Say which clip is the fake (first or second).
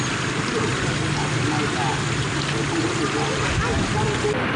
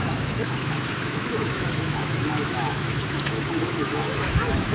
second